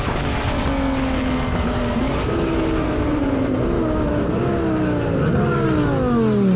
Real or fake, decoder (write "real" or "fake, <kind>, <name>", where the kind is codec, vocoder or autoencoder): real